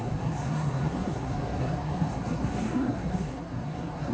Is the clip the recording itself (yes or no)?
no